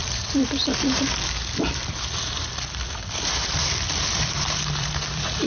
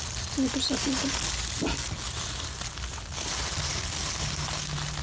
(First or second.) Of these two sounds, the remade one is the first